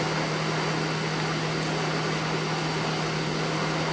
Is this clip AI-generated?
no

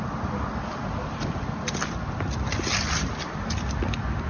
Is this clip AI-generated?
no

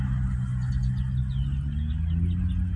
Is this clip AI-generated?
no